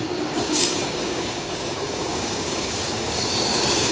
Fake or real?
fake